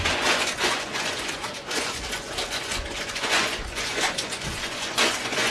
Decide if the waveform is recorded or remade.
remade